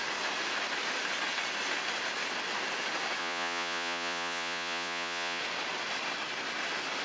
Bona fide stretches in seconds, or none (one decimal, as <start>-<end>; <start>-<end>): 0.0-3.2; 5.4-7.0